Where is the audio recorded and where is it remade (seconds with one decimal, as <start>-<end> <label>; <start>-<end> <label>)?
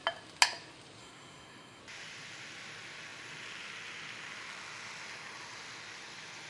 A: 0.0-1.0 recorded; 1.0-1.8 remade; 1.8-6.5 recorded